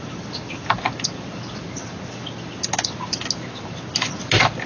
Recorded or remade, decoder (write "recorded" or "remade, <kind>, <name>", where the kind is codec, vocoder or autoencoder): recorded